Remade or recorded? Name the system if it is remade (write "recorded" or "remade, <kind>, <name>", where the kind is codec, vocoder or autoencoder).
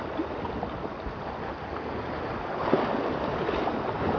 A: recorded